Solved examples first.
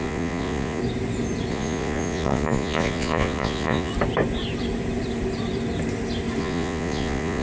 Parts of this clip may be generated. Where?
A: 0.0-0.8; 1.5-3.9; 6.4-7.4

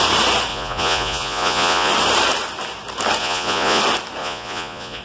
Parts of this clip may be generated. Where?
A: 0.5-1.9; 3.2-3.8; 4.2-5.0

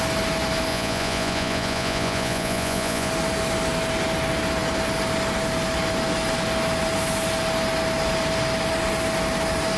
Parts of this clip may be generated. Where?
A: 0.7-3.1